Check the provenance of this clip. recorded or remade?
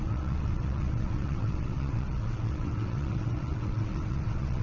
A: remade